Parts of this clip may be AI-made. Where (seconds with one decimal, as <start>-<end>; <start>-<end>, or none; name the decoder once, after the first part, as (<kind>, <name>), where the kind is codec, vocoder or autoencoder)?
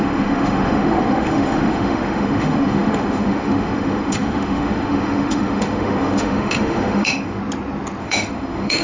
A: 0.0-7.4 (autoencoder, DAC-VAE); 8.0-8.8